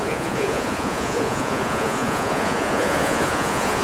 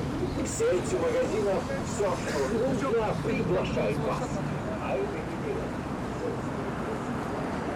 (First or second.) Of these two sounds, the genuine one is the second